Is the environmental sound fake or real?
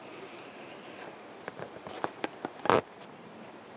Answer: real